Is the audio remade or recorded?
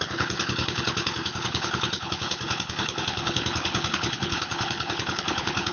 remade